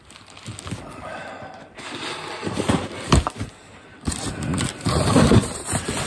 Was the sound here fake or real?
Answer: real